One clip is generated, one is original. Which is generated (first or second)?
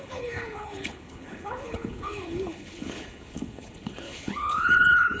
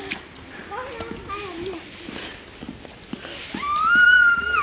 first